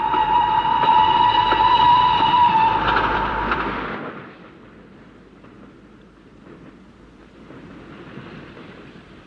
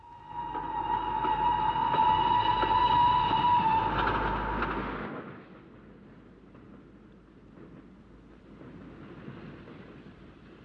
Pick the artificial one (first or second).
first